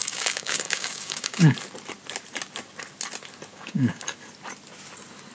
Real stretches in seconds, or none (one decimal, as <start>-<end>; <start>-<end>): 1.4-3.5; 4.0-5.3